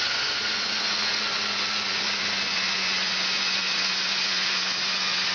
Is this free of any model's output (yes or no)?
no